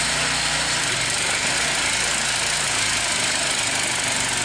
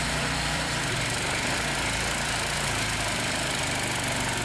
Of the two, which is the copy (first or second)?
second